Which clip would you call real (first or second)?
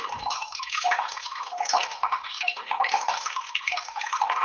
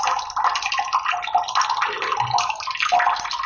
second